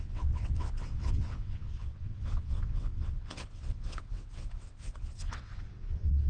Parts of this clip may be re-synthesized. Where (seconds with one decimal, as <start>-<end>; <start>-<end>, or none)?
0.0-6.3